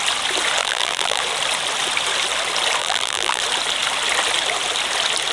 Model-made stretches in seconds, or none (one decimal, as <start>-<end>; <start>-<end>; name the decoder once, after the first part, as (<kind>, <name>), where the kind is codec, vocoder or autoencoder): 0.6-1.2 (vocoder, BigVGAN v2); 2.8-3.4